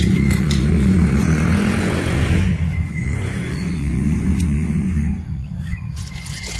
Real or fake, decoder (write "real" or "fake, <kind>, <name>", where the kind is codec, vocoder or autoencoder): fake, vocoder, Vocos